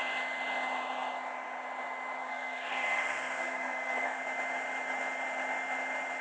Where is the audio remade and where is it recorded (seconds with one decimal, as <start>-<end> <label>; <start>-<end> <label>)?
0.0-2.2 recorded; 2.2-4.2 remade; 4.2-6.2 recorded